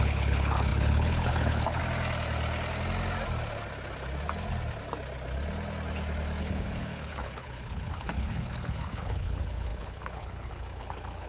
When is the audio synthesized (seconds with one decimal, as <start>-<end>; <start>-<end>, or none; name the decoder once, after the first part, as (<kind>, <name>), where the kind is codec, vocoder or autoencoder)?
0.0-1.8 (codec, HILCodec); 6.4-11.3